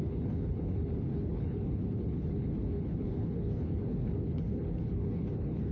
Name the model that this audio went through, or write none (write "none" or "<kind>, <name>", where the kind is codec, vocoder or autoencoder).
codec, HILCodec